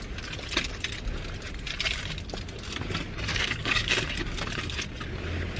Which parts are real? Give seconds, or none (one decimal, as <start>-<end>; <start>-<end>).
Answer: 0.0-3.3; 3.9-5.6